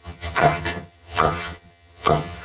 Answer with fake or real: fake